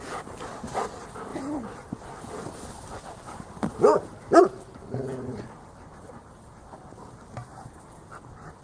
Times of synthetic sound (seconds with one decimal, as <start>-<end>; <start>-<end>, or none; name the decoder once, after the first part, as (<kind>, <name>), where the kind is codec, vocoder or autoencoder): none